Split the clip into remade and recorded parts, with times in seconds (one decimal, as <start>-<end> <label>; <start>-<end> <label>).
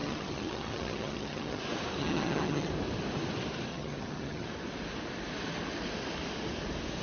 0.0-1.6 remade; 1.6-2.0 recorded; 2.0-2.7 remade; 2.7-3.7 recorded; 3.7-4.5 remade; 4.5-7.0 recorded